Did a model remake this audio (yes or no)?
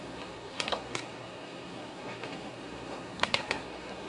yes